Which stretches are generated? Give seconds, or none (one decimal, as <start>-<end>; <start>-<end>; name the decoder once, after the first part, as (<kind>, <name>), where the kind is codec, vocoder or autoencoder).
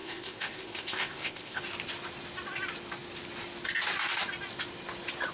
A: 0.0-1.6 (codec, ZipCodec)